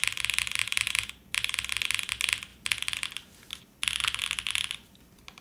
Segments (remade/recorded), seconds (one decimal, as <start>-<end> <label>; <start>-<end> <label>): 0.0-0.6 recorded; 0.6-1.1 remade; 1.1-5.4 recorded